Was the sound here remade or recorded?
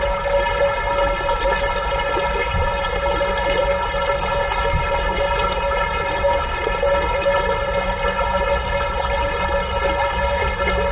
recorded